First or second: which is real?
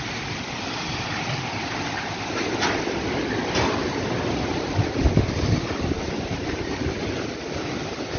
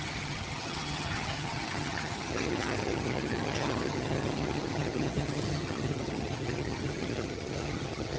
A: first